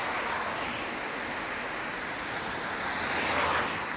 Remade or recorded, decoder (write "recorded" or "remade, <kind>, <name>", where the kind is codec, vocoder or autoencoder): recorded